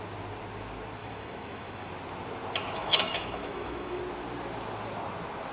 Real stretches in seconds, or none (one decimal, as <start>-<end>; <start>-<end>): 0.0-1.0; 1.9-2.8; 4.0-5.5